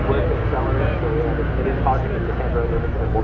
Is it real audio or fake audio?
real